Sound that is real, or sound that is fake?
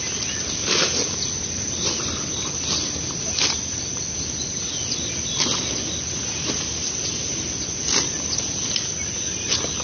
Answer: real